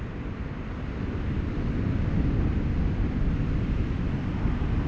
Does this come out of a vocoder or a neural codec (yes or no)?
no